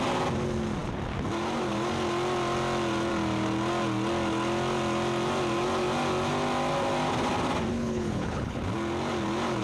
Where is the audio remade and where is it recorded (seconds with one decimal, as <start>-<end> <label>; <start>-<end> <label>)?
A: 0.0-7.7 recorded; 7.7-8.6 remade; 8.6-9.6 recorded